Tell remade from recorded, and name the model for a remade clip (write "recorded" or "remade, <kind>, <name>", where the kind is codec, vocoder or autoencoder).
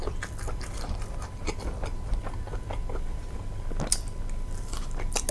recorded